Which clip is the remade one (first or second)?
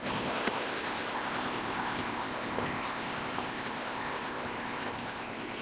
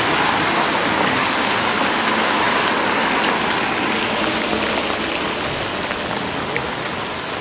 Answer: first